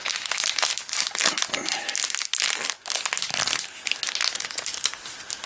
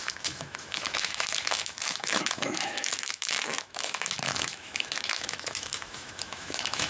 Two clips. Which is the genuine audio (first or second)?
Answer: first